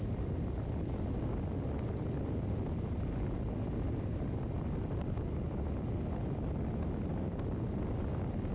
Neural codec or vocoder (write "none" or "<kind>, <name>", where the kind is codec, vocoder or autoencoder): none